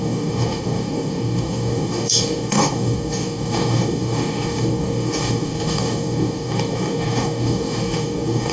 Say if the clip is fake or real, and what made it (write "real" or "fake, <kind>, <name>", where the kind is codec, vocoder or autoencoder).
fake, codec, DAC